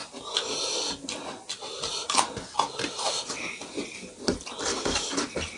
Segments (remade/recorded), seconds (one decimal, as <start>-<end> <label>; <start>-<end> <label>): 0.0-5.6 recorded